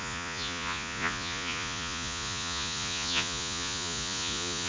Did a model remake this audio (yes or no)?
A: yes